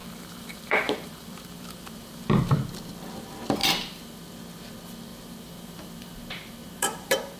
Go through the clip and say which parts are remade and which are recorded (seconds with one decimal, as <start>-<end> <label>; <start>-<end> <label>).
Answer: 0.0-2.4 remade; 2.4-3.6 recorded; 3.6-4.2 remade; 4.2-5.1 recorded; 5.1-7.4 remade